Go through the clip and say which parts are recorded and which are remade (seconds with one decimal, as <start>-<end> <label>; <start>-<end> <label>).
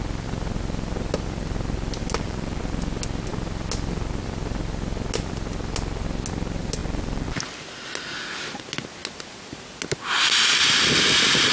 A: 0.0-2.0 recorded; 2.0-2.6 remade; 2.6-6.8 recorded; 6.8-7.4 remade; 7.4-11.5 recorded